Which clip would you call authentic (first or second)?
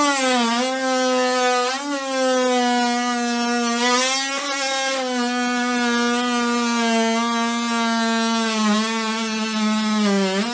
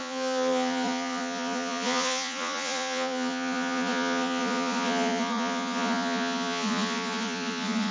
first